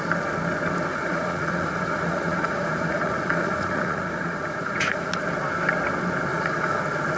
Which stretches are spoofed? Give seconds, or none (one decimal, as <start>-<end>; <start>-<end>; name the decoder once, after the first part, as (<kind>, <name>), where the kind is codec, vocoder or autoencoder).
0.9-5.2 (vocoder, Vocos); 6.3-6.8